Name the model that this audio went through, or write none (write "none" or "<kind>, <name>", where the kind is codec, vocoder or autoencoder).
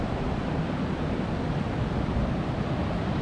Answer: none